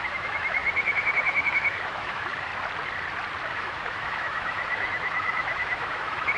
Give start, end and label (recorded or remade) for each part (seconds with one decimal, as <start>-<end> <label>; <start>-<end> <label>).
0.0-2.5 remade; 2.5-3.5 recorded; 3.5-6.4 remade

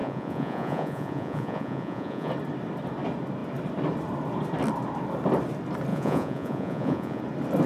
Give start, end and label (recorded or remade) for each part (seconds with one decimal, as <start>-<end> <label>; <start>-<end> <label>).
0.0-2.3 remade; 2.3-5.9 recorded; 5.9-7.2 remade; 7.2-7.7 recorded